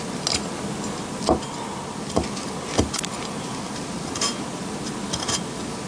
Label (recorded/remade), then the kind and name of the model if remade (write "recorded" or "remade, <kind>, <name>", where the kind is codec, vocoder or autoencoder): recorded